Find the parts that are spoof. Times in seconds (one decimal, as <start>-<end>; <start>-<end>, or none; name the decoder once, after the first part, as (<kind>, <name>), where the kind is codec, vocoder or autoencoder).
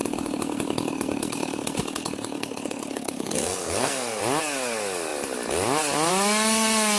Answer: 0.0-4.2 (codec, SNAC)